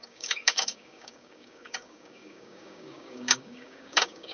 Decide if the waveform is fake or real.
fake